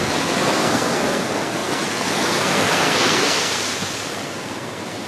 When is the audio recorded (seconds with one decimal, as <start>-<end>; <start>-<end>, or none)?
none